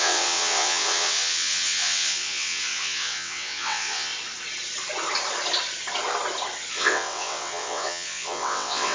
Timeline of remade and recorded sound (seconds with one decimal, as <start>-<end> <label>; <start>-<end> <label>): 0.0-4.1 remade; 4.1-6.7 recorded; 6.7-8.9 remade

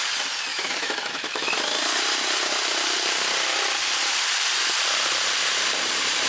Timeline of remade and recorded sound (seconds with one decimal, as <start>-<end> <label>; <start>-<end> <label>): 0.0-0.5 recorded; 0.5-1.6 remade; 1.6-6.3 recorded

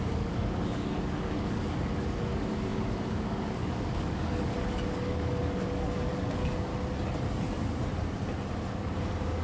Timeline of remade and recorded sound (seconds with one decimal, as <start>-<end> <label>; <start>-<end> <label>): 0.0-6.7 remade; 6.7-8.7 recorded; 8.7-9.4 remade

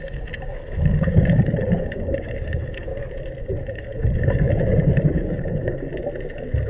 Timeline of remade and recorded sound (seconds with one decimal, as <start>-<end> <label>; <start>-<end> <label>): 0.0-2.9 remade; 2.9-3.5 recorded; 3.5-5.9 remade; 5.9-6.7 recorded

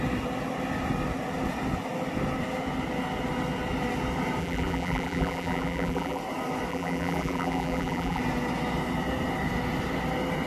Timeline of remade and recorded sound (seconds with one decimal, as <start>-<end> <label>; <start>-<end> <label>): 0.0-4.4 recorded; 4.4-6.2 remade; 6.2-6.7 recorded; 6.7-8.2 remade; 8.2-10.5 recorded

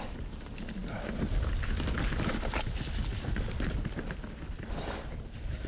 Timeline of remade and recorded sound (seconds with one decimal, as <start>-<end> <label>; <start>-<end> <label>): 0.0-5.7 recorded

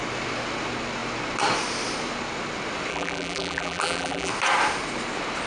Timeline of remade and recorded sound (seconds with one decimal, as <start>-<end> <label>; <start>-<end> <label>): 0.0-2.9 recorded; 2.9-4.3 remade; 4.3-5.5 recorded